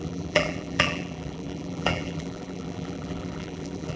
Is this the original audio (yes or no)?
no